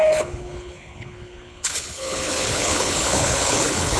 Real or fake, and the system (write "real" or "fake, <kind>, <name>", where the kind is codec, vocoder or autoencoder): fake, codec, HILCodec